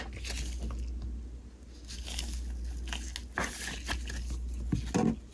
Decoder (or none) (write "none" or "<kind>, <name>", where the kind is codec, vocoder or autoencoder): none